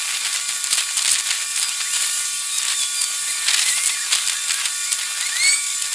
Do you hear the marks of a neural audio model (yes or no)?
no